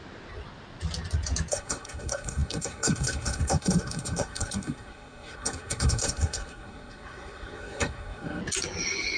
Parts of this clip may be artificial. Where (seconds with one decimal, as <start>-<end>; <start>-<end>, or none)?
1.5-8.4

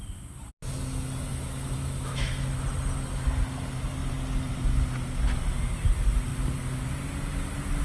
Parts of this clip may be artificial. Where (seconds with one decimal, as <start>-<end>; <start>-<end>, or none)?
1.3-2.3

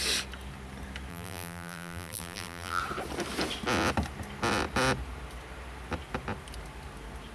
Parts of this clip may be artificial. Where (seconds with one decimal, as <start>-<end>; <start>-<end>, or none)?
1.1-2.8